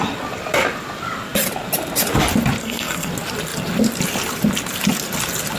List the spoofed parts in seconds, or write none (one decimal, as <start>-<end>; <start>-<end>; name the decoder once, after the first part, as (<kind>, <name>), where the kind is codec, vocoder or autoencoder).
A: 2.6-3.1 (codec, SNAC)

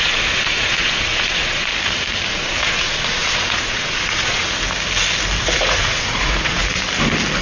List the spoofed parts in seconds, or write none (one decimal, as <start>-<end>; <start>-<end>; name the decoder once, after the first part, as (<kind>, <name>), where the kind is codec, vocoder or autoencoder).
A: 0.0-1.7 (vocoder, Vocos); 2.3-4.4; 5.4-6.6